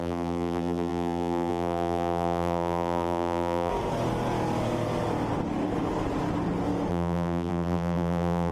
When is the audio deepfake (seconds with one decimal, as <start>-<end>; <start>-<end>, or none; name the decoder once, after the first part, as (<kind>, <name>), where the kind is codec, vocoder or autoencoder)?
0.0-3.7 (vocoder, BigVGAN v2); 6.9-8.5